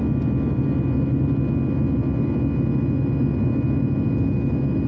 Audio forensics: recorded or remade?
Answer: recorded